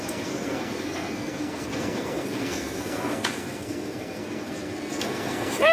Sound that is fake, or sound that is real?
fake